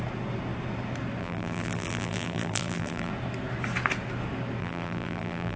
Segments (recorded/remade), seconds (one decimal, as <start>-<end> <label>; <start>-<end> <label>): 0.0-1.2 recorded; 1.2-3.1 remade; 3.1-4.6 recorded; 4.6-5.6 remade